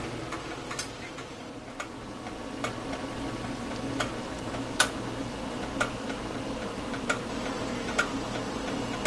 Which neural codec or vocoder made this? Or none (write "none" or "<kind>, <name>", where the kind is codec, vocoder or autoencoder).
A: none